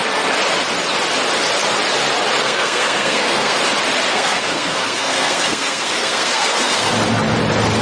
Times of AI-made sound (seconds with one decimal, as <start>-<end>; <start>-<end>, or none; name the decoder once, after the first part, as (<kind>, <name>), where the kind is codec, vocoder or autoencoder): 2.4-3.6 (codec, SNAC); 4.1-6.9